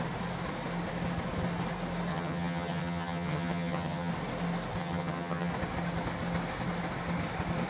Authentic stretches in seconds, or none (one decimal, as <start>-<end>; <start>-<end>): 0.0-2.1; 4.1-4.8; 5.5-7.7